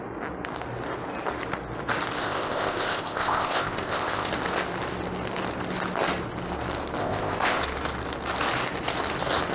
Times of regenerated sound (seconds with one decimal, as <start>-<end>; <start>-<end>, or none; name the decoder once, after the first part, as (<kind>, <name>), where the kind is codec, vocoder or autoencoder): 2.2-4.3 (codec, ZipCodec); 7.0-7.6